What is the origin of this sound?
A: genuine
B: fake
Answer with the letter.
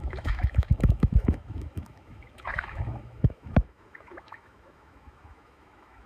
B